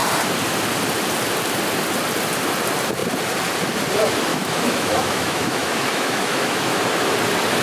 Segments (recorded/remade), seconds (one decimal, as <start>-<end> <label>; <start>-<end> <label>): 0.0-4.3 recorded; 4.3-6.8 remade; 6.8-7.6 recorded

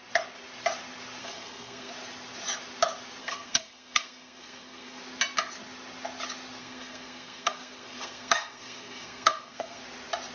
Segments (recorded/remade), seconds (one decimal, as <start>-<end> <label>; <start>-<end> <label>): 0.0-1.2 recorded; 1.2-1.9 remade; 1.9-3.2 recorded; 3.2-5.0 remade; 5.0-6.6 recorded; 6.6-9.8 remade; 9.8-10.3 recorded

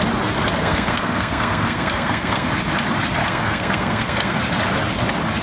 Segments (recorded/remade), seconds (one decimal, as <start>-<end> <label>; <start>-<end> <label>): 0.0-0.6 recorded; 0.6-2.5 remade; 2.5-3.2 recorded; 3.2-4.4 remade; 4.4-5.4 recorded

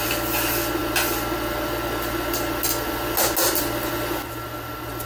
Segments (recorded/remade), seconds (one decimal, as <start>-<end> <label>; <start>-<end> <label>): 0.0-5.1 recorded

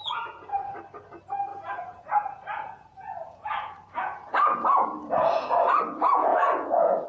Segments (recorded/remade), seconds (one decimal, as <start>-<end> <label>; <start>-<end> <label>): 0.0-0.5 remade; 0.5-1.5 recorded; 1.5-5.8 remade; 5.8-6.3 recorded; 6.3-7.1 remade

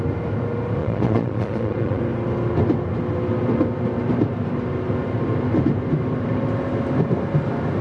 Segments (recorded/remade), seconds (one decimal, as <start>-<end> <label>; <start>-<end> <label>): 0.0-0.8 recorded; 0.8-2.0 remade; 2.0-7.8 recorded